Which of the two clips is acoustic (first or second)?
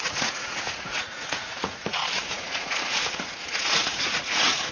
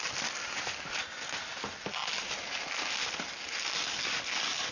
second